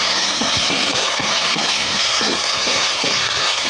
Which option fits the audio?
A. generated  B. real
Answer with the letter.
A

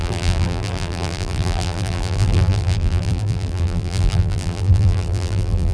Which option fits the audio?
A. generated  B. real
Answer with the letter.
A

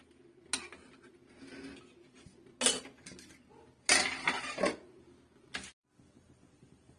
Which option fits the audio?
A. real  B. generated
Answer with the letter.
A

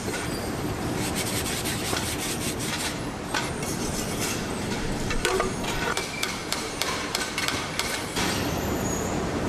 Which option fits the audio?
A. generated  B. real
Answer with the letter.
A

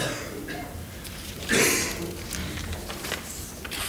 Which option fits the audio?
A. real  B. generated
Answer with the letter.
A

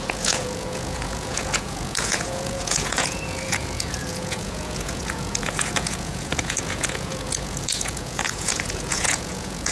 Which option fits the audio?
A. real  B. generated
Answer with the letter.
B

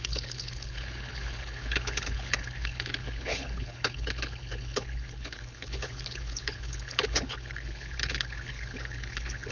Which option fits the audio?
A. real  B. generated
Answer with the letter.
B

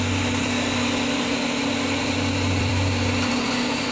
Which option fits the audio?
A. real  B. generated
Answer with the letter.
B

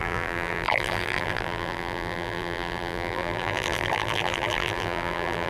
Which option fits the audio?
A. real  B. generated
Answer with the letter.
B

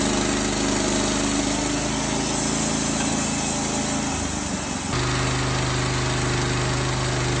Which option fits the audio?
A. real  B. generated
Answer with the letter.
A